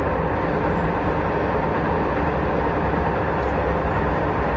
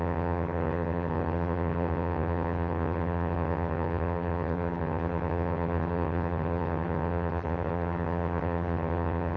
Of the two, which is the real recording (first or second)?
first